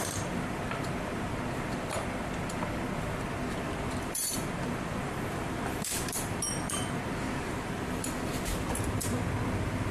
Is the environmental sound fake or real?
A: fake